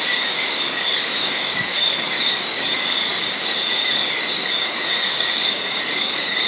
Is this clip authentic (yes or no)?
no